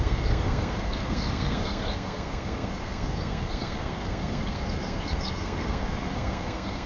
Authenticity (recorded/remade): remade